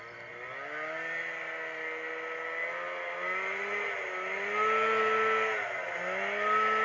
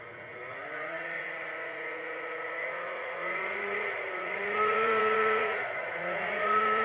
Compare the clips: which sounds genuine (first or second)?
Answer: first